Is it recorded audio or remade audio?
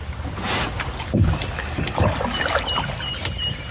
recorded